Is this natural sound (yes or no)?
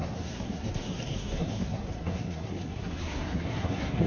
no